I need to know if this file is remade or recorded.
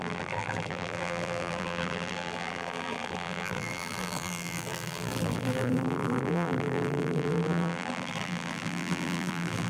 remade